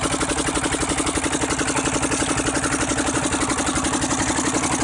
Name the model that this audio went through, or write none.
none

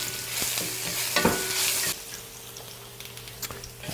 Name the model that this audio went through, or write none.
none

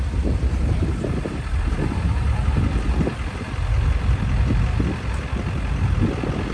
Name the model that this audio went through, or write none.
none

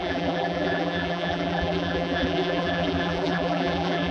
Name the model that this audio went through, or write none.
vocoder, BigVGAN v2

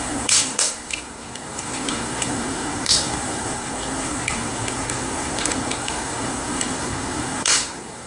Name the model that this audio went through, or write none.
codec, SNAC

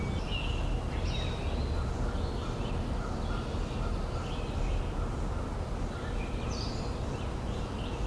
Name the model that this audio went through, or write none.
none